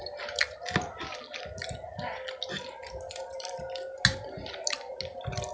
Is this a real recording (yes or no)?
yes